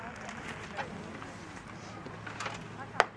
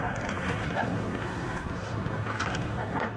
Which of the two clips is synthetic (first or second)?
second